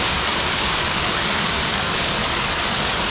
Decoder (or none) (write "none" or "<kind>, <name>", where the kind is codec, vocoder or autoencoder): codec, DAC